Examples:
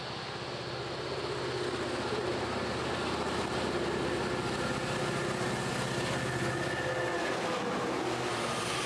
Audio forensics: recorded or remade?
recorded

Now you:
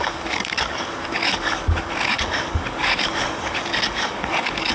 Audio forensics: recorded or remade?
remade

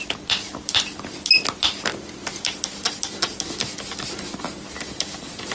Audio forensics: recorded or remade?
recorded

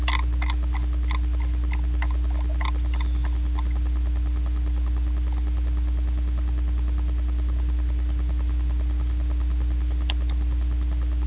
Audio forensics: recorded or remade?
recorded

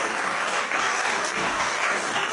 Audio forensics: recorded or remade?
remade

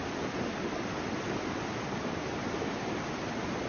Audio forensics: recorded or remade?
recorded